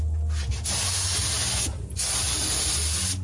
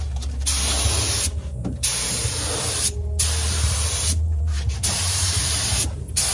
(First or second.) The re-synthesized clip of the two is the second